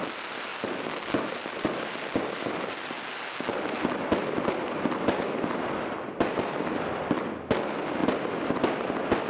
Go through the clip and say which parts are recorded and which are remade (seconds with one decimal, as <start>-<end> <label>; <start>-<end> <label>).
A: 0.0-9.3 recorded